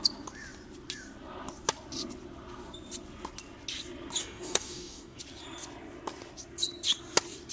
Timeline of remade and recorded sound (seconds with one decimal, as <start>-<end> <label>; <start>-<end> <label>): 0.0-4.2 recorded; 4.2-5.2 remade; 5.2-7.5 recorded